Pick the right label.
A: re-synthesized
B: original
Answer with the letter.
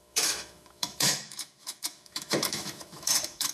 A